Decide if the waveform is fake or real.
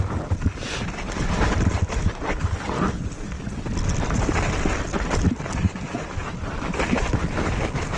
real